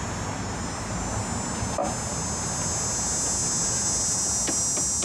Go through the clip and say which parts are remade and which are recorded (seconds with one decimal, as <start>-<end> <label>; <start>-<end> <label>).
0.0-5.0 recorded